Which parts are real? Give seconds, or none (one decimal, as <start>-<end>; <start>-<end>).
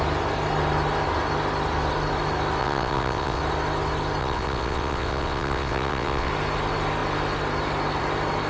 0.0-2.6; 3.4-4.2; 6.3-8.5